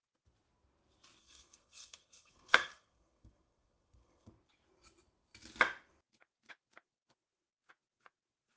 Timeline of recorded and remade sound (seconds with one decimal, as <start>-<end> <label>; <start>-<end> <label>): 0.0-1.2 recorded; 1.2-4.3 remade; 4.3-8.6 recorded